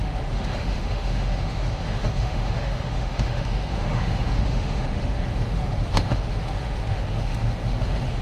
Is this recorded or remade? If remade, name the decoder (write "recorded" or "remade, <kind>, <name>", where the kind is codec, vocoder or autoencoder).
remade, autoencoder, DAC-VAE